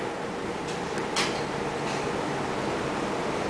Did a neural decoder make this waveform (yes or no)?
no